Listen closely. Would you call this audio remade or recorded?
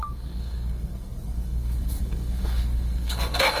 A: remade